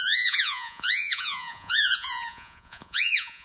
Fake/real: fake